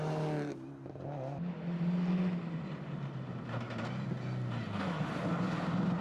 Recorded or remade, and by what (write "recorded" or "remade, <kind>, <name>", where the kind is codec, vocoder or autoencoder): recorded